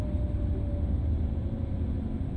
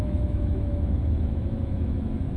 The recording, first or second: first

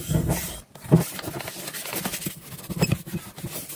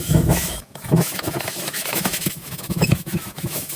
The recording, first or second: first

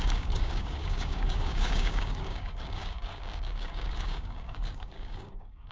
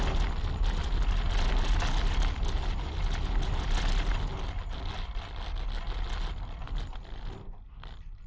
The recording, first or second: second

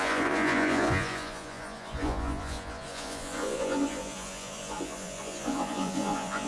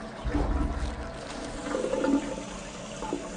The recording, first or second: second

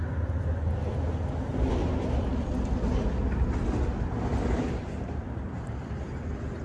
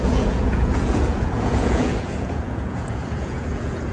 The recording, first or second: first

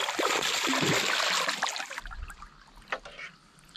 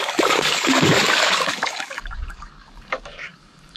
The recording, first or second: first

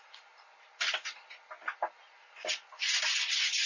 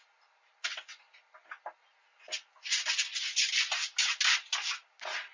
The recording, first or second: second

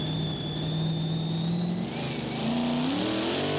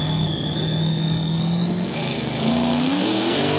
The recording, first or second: first